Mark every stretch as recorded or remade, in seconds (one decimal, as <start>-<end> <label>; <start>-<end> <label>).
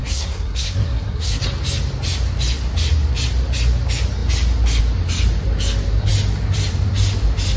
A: 0.0-1.4 remade; 1.4-7.6 recorded